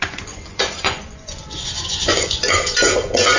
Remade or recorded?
remade